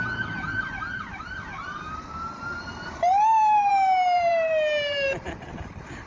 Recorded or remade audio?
remade